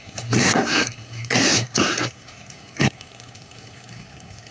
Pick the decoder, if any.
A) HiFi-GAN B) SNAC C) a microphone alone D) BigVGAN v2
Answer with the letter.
B